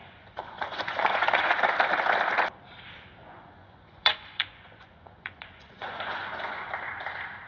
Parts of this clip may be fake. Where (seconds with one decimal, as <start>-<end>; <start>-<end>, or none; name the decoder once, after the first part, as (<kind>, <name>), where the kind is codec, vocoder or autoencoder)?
0.0-1.5 (vocoder, Vocos); 3.2-6.7